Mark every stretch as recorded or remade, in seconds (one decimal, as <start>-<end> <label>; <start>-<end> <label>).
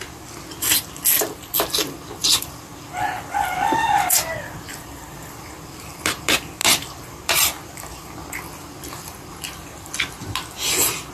0.0-2.2 recorded; 2.2-6.0 remade; 6.0-11.1 recorded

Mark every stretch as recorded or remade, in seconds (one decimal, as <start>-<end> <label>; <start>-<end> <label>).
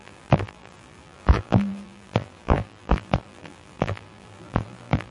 0.0-5.1 remade